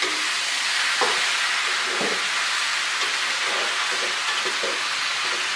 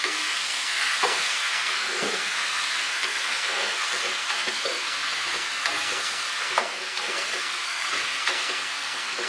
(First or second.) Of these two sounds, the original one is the first